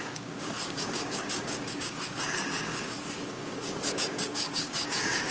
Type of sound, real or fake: fake